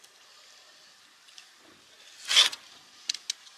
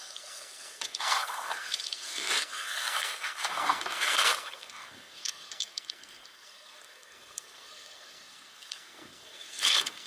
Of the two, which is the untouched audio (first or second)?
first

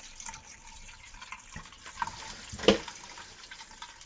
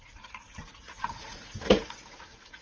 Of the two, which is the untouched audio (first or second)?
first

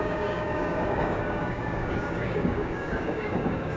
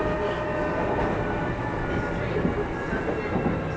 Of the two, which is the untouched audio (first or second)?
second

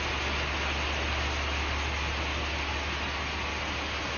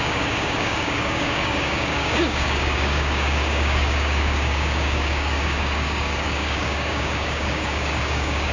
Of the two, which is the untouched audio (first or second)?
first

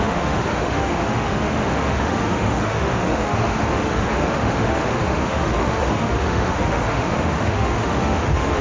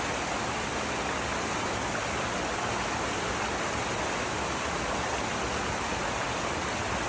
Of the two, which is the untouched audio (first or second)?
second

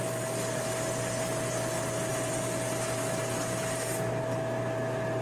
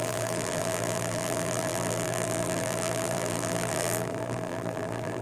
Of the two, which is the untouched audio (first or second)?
first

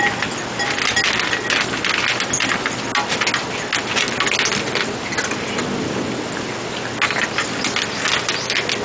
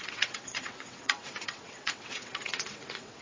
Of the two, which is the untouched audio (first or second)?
first